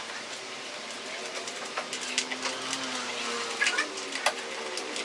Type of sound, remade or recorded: recorded